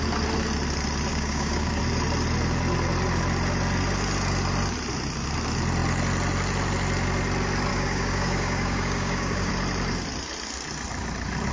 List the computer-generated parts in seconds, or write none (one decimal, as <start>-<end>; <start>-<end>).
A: 1.1-1.8; 7.7-9.5